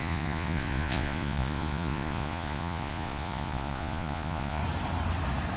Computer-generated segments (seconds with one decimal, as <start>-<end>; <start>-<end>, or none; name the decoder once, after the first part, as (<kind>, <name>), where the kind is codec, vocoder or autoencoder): 0.0-4.6 (vocoder, Vocos)